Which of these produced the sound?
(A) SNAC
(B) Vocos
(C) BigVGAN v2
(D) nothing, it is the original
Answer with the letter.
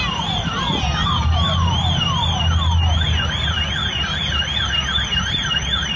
D